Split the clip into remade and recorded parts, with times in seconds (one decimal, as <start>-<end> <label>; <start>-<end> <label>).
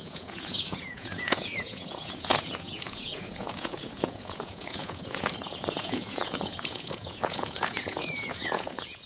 0.0-9.1 remade